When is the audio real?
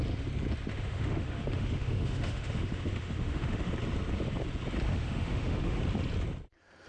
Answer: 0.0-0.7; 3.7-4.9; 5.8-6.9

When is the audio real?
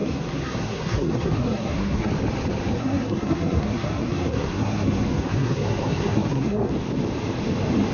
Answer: 2.1-2.8; 6.7-7.9